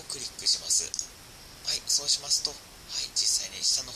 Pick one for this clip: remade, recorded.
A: recorded